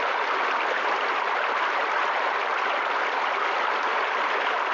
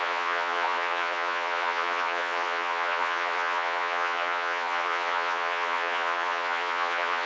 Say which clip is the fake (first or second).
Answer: second